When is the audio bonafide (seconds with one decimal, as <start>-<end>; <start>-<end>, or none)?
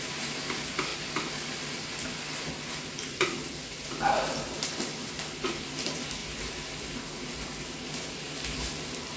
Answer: 0.9-2.8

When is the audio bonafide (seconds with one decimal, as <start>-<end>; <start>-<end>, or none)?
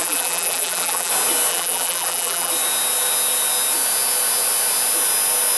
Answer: 1.1-1.5; 2.5-5.6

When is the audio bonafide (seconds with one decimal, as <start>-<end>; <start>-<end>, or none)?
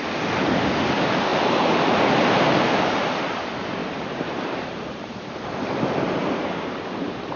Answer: 0.0-1.3; 3.4-3.8; 6.7-7.4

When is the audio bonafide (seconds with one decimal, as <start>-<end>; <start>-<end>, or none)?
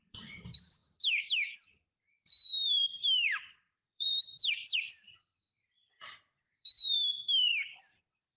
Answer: 0.8-1.6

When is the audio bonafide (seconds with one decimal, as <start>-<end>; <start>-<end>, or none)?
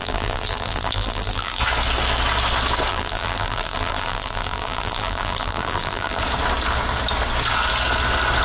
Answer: 1.6-2.9; 6.2-8.4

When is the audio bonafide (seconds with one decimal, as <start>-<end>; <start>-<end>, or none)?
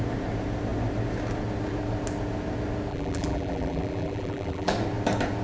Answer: 0.0-2.9; 4.7-5.4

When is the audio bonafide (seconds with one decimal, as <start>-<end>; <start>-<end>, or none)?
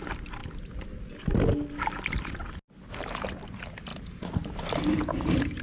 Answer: 0.0-0.4; 1.0-5.6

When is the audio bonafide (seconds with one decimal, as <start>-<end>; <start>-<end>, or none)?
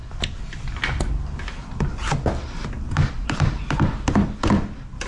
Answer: 0.0-3.1; 3.6-5.1